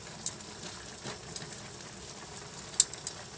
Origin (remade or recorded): recorded